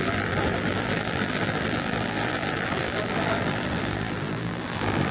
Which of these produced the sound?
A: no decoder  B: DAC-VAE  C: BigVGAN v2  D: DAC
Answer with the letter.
C